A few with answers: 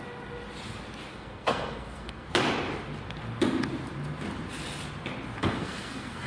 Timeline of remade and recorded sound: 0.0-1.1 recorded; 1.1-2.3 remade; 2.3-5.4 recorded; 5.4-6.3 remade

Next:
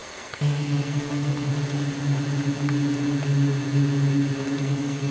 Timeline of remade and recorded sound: 0.0-1.5 remade; 1.5-4.6 recorded; 4.6-5.1 remade

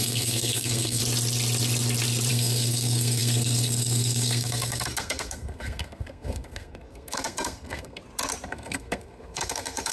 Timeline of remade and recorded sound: 0.0-1.0 remade; 1.0-2.3 recorded; 2.3-8.0 remade; 8.0-8.5 recorded; 8.5-9.9 remade

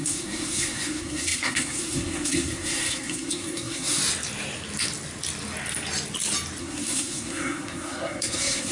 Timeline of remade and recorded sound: 0.0-4.0 remade; 4.0-6.6 recorded; 6.6-8.7 remade

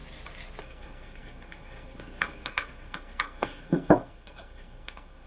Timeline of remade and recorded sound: 0.0-0.6 recorded; 0.6-5.3 remade

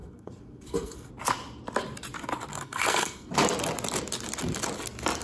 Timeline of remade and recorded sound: 0.0-1.1 remade; 1.1-2.5 recorded; 2.5-3.3 remade; 3.3-5.2 recorded